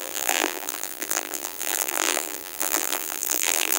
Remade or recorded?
remade